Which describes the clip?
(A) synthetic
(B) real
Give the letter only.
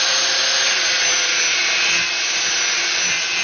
B